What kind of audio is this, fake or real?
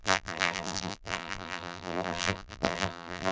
fake